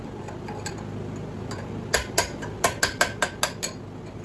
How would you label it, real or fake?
real